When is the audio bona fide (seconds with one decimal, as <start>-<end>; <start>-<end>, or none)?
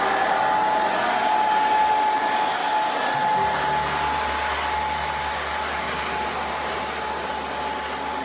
0.0-8.2